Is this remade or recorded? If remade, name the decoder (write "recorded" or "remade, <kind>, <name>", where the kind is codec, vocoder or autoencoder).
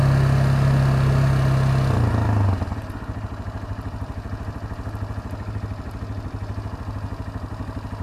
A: recorded